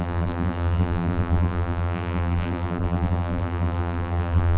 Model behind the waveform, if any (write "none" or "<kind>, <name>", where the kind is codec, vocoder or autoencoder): vocoder, BigVGAN v2